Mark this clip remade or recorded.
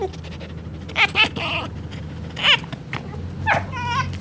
recorded